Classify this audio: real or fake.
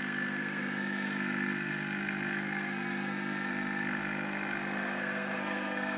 fake